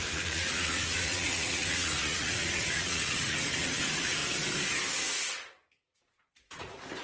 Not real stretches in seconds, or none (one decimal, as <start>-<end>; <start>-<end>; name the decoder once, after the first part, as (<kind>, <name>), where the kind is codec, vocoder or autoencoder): 0.0-4.2 (vocoder, Vocos); 6.3-7.0